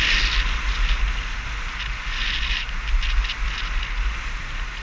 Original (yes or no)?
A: yes